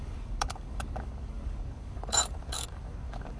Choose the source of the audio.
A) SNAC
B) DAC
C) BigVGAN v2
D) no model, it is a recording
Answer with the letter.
B